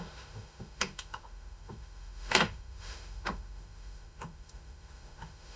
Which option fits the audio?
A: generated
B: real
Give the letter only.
A